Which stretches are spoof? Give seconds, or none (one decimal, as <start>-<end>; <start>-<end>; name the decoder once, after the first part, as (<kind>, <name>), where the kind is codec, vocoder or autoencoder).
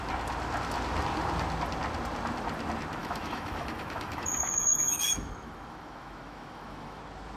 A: 3.0-7.0 (autoencoder, DAC-VAE)